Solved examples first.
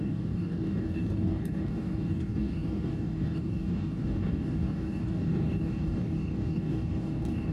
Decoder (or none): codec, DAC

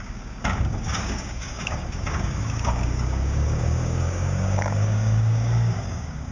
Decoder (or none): codec, DAC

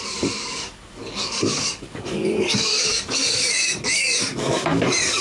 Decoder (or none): codec, DAC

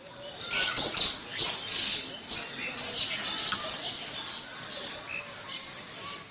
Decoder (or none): none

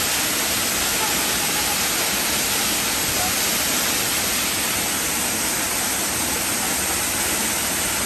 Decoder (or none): none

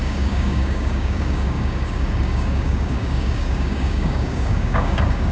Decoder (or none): codec, DAC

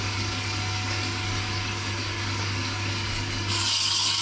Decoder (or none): codec, DAC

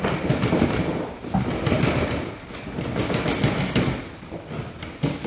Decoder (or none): none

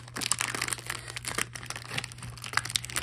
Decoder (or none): none